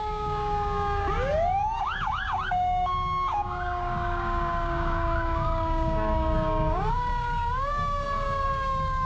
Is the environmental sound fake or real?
fake